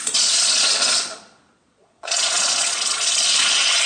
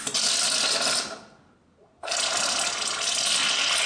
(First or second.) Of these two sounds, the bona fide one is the second